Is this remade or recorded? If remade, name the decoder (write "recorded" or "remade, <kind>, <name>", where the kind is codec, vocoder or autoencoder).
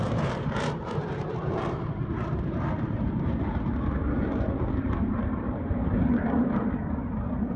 remade, vocoder, BigVGAN v2